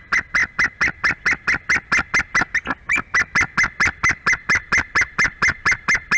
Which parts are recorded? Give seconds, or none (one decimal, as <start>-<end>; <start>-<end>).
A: 0.0-6.2